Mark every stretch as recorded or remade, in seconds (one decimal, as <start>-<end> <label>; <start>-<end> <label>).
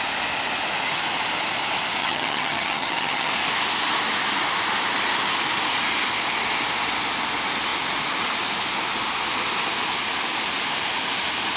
0.0-2.0 recorded; 2.0-3.3 remade; 3.3-11.6 recorded